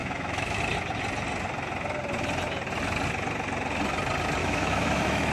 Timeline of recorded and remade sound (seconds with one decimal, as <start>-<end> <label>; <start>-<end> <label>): 0.0-0.6 remade; 0.6-4.4 recorded; 4.4-5.3 remade